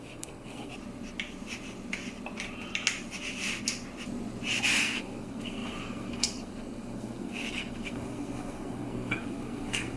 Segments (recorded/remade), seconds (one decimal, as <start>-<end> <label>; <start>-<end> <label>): 0.0-0.7 remade; 0.7-4.8 recorded; 4.8-10.0 remade